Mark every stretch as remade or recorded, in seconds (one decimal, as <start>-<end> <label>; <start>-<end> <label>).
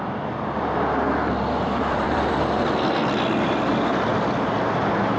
0.0-1.2 recorded; 1.2-3.2 remade; 3.2-5.2 recorded